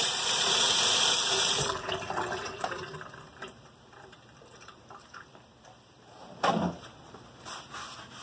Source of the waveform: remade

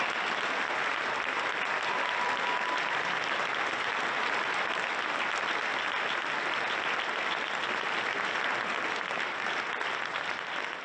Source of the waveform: recorded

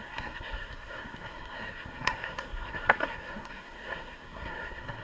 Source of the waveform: remade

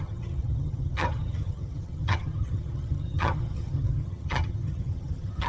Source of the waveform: remade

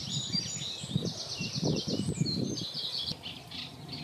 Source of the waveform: remade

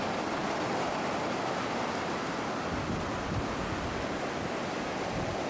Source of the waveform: recorded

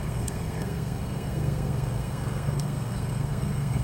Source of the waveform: remade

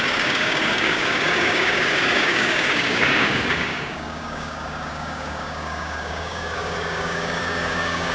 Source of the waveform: remade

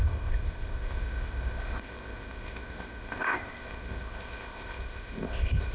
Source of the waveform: remade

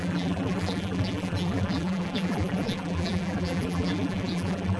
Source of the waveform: remade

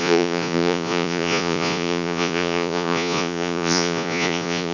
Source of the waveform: remade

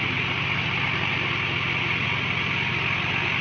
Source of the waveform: recorded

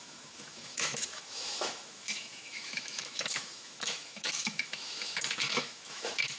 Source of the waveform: remade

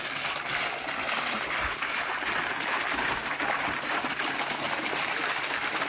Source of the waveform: recorded